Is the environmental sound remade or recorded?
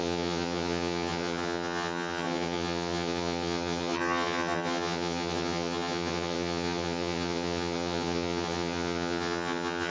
remade